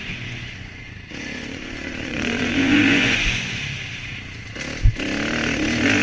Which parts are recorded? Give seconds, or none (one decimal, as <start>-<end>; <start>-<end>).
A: 3.6-6.0